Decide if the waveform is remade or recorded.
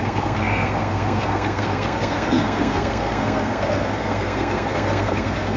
remade